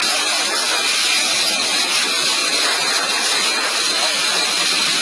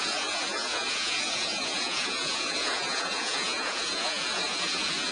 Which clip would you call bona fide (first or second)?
first